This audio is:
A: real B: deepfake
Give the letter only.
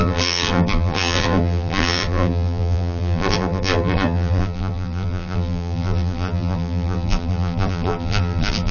B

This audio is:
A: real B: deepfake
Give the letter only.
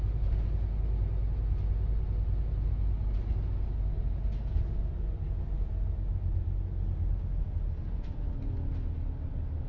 A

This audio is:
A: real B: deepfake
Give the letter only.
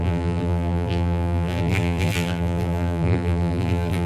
B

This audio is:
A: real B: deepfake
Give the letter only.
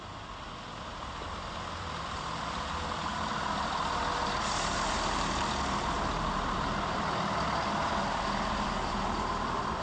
B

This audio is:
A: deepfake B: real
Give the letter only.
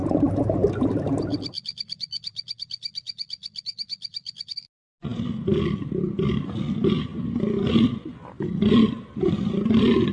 B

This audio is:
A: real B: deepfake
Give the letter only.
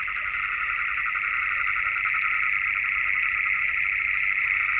A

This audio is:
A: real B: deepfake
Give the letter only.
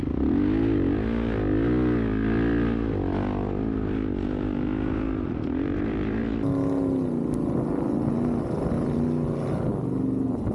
A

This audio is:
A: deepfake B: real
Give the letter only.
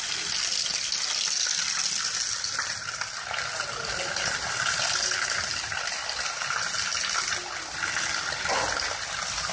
B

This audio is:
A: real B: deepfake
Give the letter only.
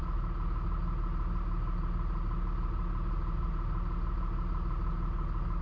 A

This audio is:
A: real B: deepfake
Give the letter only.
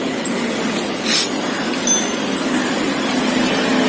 A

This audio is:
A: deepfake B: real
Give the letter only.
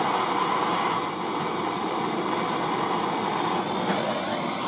B